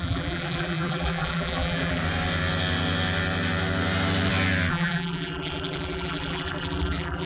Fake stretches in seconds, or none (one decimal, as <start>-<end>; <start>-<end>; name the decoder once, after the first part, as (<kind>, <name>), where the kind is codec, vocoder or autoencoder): 0.0-2.0 (vocoder, BigVGAN v2); 4.7-7.3